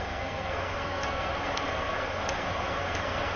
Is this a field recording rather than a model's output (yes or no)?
no